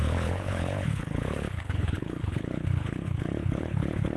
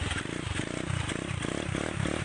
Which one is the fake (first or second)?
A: first